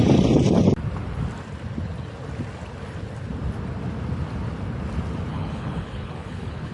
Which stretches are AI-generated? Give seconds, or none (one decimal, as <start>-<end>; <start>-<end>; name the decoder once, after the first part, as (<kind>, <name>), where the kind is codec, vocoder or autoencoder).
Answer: 5.3-6.7 (codec, HILCodec)